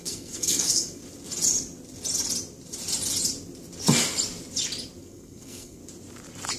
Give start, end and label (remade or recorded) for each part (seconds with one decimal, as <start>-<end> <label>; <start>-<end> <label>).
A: 0.0-1.0 remade; 1.0-5.0 recorded; 5.0-5.8 remade; 5.8-6.6 recorded